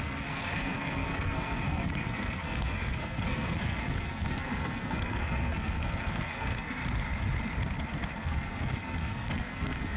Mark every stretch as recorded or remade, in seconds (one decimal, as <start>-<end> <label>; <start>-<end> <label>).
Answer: 0.0-6.8 remade; 6.8-8.2 recorded; 8.2-10.0 remade